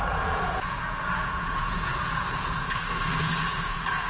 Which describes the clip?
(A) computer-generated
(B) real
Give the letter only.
A